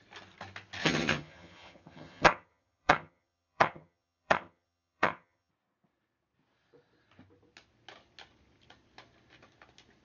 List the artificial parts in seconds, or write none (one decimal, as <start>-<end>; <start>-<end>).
0.8-5.5